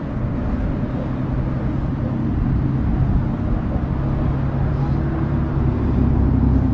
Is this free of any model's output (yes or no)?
yes